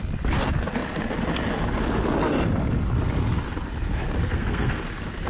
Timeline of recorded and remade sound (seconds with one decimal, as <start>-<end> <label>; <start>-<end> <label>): 0.0-4.2 recorded; 4.2-4.8 remade; 4.8-5.3 recorded